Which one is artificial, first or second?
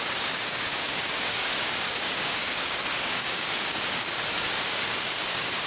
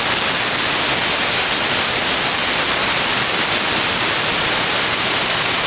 first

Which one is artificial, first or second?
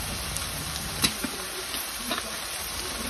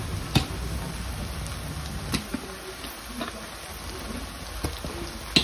first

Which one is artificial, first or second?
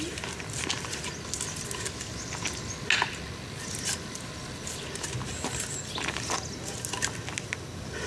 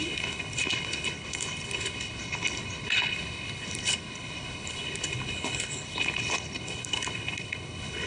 second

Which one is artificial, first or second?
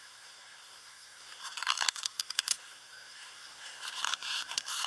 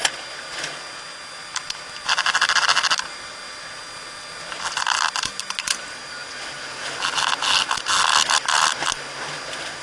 first